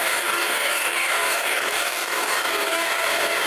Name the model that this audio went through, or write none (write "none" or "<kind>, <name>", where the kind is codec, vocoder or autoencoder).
codec, DAC